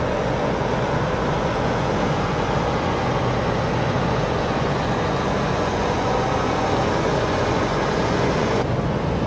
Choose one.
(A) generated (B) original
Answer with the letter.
A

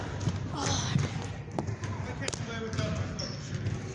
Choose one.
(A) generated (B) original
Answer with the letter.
B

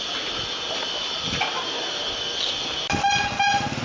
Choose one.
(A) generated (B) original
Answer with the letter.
B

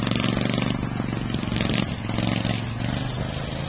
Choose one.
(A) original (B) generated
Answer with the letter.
A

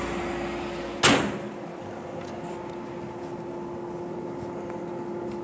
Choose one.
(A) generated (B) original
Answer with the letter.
B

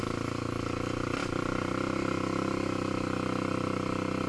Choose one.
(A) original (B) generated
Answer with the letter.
A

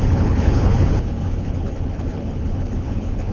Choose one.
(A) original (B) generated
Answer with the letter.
B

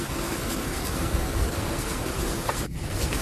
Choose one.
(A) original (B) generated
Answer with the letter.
B